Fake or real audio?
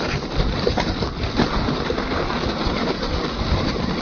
real